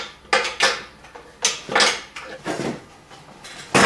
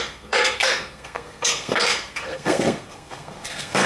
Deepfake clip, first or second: second